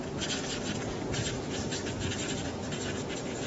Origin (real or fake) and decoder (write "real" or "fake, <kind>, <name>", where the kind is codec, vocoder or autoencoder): real